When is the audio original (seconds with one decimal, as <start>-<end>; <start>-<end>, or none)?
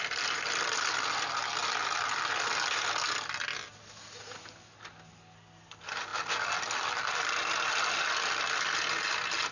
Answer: 0.0-9.5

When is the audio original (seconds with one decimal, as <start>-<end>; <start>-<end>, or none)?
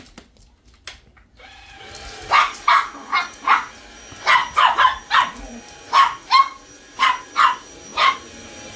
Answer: 0.0-8.8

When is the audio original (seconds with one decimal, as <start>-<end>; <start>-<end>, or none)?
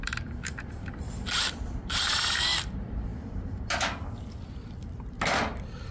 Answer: 3.1-4.3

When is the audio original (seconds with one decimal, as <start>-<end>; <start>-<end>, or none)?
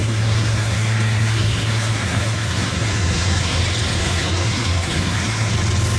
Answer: 3.6-4.0; 5.5-6.0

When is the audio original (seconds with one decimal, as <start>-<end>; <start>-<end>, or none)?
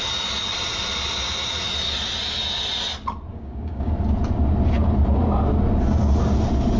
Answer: 0.0-3.3; 3.9-6.8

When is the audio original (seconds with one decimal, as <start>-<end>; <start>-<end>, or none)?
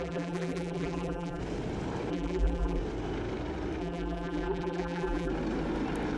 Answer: 1.4-2.1; 2.8-3.8; 5.3-6.2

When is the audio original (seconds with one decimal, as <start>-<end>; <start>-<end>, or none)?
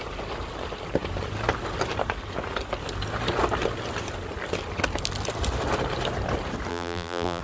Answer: 0.0-6.7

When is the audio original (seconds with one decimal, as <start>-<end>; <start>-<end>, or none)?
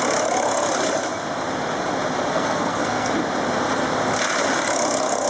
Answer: 0.0-2.3; 3.1-5.3